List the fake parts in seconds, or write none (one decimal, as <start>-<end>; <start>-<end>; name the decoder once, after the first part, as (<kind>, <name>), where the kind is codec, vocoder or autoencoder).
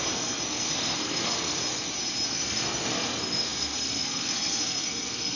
0.0-1.6 (codec, SNAC); 2.3-5.4